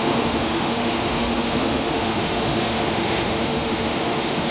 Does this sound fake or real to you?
fake